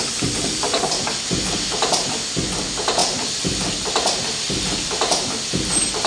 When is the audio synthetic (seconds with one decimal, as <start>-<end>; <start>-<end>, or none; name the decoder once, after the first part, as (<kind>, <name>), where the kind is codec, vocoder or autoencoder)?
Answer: 3.0-5.5 (vocoder, BigVGAN v2)